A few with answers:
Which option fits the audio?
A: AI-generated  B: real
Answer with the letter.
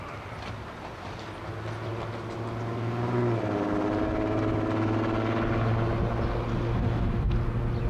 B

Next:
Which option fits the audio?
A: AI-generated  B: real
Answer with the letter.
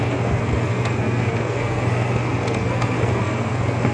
A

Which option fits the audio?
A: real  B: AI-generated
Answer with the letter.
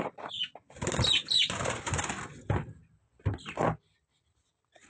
A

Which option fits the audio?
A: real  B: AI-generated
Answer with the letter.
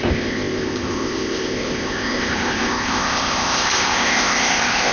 B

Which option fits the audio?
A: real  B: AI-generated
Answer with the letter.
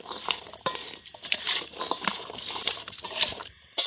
B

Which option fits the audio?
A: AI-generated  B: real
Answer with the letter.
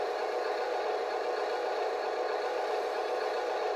A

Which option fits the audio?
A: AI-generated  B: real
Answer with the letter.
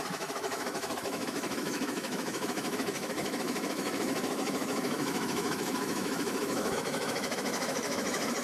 A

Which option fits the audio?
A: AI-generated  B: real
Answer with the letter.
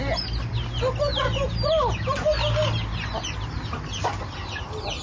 B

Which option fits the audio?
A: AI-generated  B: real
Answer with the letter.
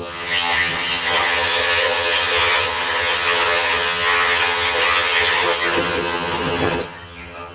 A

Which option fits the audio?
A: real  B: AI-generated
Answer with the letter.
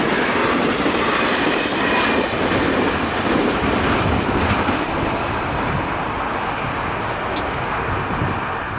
A